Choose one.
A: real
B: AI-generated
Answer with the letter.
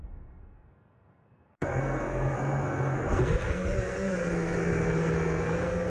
B